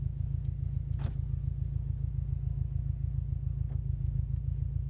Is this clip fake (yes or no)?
no